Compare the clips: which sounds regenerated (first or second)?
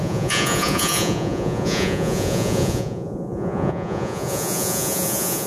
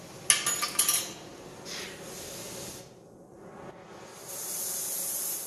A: first